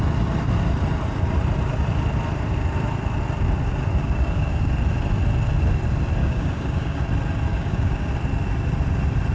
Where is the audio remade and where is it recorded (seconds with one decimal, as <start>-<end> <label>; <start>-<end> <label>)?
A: 0.0-4.0 recorded; 4.0-4.7 remade; 4.7-6.2 recorded; 6.2-7.0 remade; 7.0-7.5 recorded; 7.5-8.1 remade; 8.1-9.3 recorded